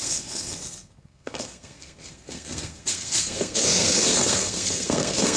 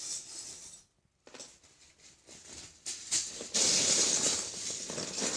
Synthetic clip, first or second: first